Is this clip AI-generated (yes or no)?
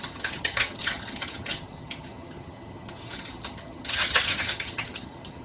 yes